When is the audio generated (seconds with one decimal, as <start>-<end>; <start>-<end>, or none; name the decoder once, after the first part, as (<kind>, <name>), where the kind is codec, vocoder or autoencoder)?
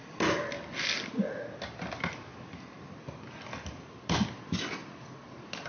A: none